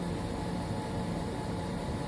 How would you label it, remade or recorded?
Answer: remade